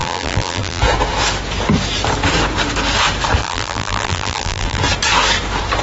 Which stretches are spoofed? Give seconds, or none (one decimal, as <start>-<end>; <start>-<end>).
0.0-0.8; 3.4-4.8